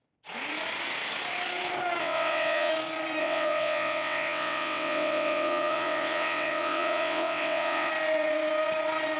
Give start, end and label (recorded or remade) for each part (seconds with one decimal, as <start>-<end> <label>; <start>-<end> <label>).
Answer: 0.0-2.0 recorded; 2.0-2.7 remade; 2.7-3.2 recorded; 3.2-7.9 remade; 7.9-9.2 recorded